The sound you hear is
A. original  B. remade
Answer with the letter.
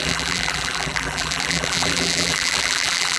B